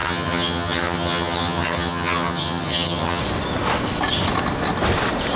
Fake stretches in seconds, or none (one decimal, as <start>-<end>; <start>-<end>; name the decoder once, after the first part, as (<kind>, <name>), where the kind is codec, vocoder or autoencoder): 0.0-3.2 (vocoder, HiFi-GAN)